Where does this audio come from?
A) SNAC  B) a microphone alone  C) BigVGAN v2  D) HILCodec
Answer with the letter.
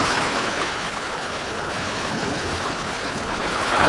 D